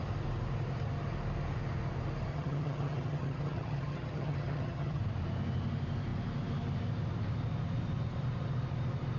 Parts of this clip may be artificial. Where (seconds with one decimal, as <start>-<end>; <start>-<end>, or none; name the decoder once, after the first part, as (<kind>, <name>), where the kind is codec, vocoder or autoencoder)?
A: 2.3-5.0 (vocoder, HiFi-GAN)